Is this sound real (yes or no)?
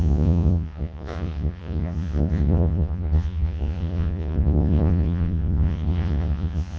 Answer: no